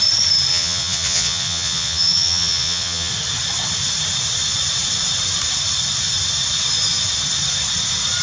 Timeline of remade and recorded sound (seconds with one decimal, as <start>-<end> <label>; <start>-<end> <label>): 0.0-0.5 recorded; 0.5-3.1 remade; 3.1-8.2 recorded